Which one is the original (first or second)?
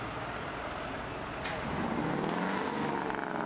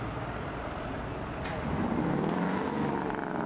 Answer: first